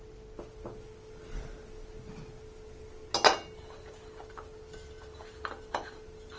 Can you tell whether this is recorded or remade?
recorded